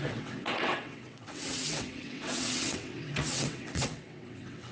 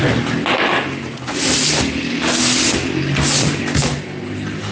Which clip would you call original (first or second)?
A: second